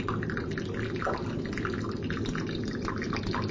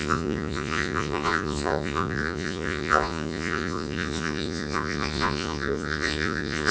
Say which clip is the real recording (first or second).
first